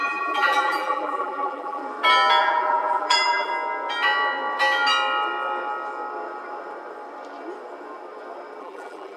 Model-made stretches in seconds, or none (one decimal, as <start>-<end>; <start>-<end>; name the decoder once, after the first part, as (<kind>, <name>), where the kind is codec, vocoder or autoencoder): 0.0-1.8 (vocoder, BigVGAN v2); 2.4-3.5; 8.6-9.2

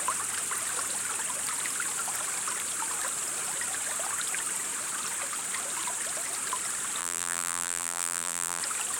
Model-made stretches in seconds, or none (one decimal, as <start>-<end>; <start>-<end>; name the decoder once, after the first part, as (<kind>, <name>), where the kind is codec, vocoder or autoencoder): 7.0-8.6 (vocoder, BigVGAN v2)

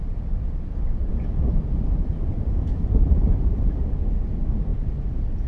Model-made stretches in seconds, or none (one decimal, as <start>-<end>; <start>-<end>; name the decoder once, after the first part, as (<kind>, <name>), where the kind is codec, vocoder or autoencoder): 1.1-3.8 (vocoder, BigVGAN v2)

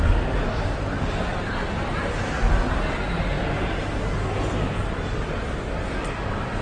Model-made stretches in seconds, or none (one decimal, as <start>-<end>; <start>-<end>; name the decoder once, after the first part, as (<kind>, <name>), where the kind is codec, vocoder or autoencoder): 0.0-1.3 (vocoder, BigVGAN v2); 4.8-6.6

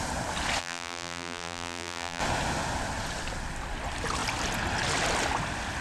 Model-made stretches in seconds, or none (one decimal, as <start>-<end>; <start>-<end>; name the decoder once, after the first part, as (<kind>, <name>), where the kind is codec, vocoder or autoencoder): 0.6-2.2 (vocoder, BigVGAN v2)

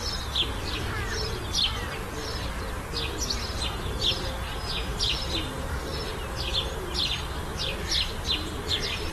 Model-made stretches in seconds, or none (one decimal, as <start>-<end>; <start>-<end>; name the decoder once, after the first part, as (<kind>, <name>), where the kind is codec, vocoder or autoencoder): 4.9-6.1 (vocoder, BigVGAN v2)